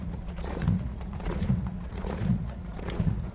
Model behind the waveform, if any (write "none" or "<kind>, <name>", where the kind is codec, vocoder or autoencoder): vocoder, Vocos